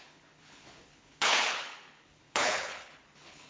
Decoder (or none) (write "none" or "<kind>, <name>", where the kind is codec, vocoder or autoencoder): codec, HILCodec